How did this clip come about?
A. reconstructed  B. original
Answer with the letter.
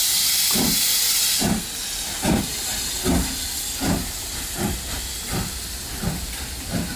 B